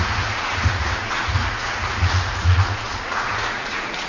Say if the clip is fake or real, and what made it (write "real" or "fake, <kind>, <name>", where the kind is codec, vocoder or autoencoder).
fake, vocoder, Vocos